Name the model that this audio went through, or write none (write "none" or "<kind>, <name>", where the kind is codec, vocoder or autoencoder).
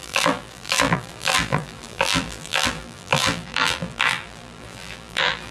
vocoder, BigVGAN v2